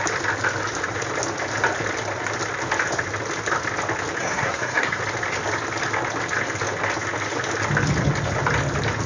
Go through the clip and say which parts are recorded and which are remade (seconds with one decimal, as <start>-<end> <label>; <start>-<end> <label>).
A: 0.0-4.2 recorded; 4.2-5.0 remade; 5.0-9.1 recorded